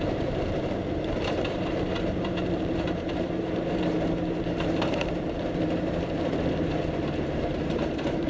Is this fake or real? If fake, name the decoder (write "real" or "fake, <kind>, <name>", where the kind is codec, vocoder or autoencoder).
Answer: fake, vocoder, BigVGAN v2